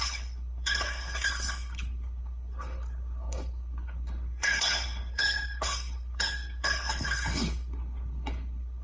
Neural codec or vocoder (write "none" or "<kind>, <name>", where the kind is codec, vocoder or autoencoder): codec, HILCodec